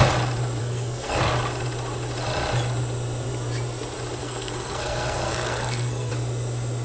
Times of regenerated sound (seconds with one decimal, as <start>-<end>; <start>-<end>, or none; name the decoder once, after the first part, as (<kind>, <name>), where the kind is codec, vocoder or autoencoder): 0.6-1.2 (codec, SNAC); 4.2-6.1